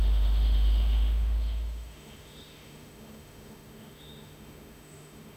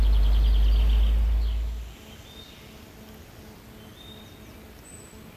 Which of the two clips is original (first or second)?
second